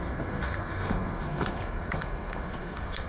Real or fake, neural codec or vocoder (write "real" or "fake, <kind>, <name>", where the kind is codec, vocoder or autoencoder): fake, codec, SNAC